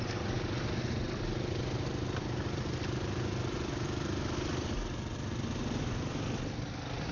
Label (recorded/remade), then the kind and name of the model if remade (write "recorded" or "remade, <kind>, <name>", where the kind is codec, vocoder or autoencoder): recorded